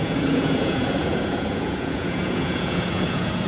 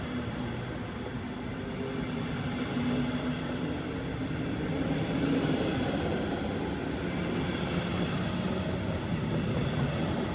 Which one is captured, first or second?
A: second